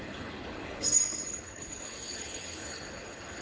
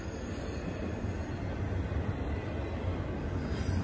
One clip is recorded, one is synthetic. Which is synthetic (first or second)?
first